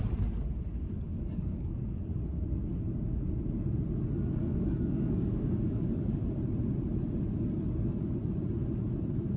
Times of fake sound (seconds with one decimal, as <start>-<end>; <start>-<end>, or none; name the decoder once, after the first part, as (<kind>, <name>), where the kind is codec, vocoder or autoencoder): 0.8-2.2 (codec, DAC); 4.4-6.2